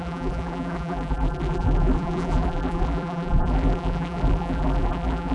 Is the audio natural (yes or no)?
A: no